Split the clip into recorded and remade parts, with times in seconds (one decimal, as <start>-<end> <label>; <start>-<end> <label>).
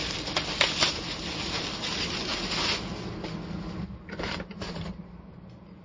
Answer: 0.0-0.9 recorded; 0.9-2.3 remade; 2.3-4.3 recorded; 4.3-5.8 remade